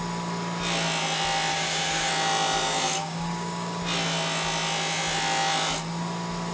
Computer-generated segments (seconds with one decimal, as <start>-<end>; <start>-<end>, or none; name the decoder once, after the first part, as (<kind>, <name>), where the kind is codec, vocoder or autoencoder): 1.5-2.1 (codec, DAC); 3.0-3.8